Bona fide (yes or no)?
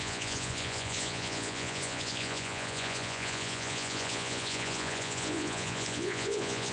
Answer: no